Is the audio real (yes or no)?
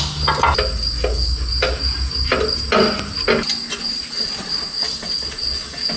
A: yes